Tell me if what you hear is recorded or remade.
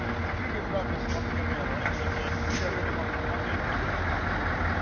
recorded